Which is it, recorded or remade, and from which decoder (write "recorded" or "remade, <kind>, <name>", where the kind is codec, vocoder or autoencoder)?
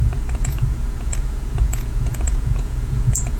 remade, vocoder, Vocos